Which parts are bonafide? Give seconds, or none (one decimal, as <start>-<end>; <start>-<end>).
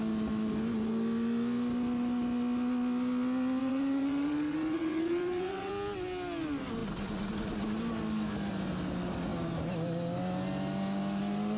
0.0-3.6; 5.7-11.6